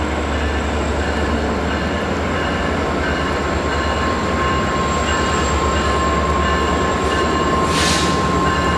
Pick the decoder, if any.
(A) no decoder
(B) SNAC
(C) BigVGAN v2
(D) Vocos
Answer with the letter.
A